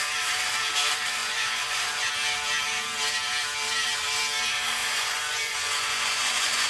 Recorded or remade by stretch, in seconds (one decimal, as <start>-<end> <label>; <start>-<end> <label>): 0.0-1.2 recorded; 1.2-2.1 remade; 2.1-4.8 recorded; 4.8-6.7 remade